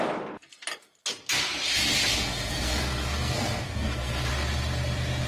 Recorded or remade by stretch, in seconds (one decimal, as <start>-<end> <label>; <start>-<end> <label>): 0.0-2.2 recorded; 2.2-4.3 remade; 4.3-5.3 recorded